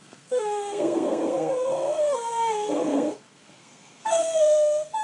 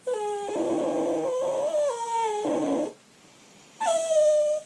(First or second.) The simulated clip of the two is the first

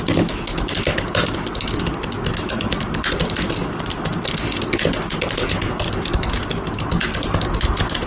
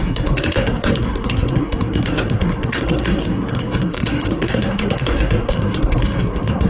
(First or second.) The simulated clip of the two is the second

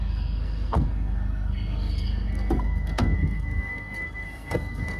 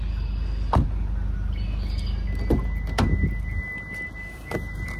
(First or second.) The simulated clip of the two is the first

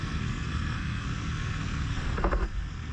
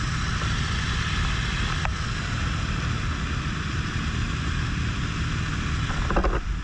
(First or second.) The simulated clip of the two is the first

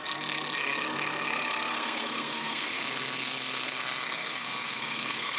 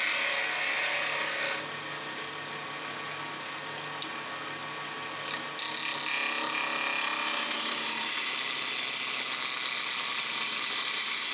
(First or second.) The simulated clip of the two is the first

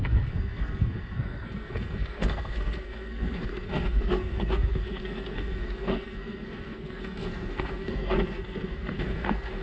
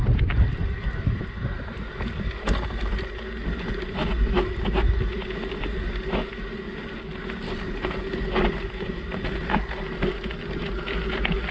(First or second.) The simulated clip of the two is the first